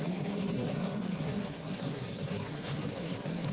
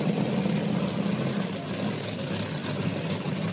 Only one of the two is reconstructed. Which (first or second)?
first